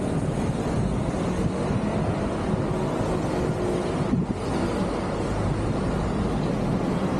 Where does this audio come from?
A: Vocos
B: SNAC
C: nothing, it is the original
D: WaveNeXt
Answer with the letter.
C